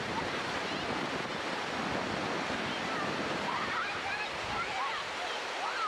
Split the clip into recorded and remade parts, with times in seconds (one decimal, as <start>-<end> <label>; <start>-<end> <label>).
0.0-5.9 recorded